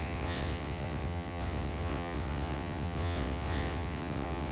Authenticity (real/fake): fake